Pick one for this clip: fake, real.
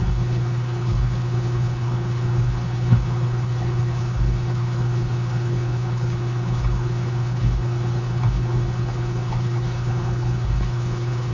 fake